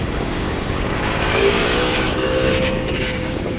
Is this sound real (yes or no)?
no